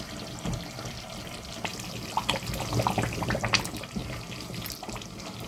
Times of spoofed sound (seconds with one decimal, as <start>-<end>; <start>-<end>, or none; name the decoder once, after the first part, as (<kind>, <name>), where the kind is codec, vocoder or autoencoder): none